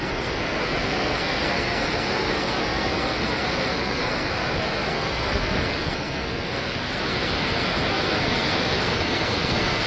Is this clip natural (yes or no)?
no